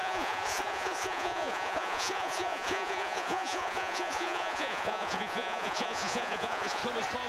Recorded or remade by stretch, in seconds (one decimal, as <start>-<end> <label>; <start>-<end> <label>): 0.0-6.8 remade; 6.8-7.3 recorded

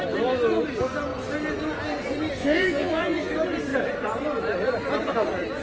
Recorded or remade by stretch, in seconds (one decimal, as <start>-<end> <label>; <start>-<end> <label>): 0.0-2.4 recorded; 2.4-3.3 remade; 3.3-5.6 recorded